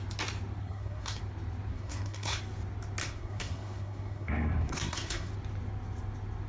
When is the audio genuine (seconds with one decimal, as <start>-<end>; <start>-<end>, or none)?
0.0-0.6; 1.2-1.7; 2.4-3.0; 5.3-6.5